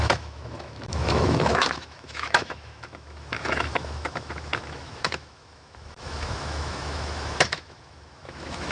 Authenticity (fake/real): fake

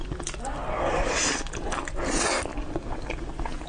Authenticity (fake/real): real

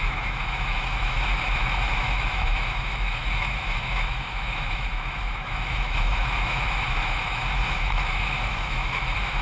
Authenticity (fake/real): fake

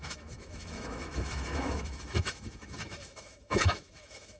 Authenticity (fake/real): fake